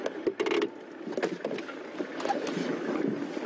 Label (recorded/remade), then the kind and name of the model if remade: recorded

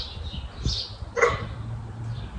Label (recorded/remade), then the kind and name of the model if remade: recorded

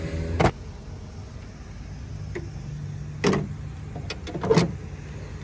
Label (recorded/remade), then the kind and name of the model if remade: recorded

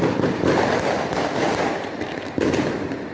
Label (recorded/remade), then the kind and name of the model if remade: recorded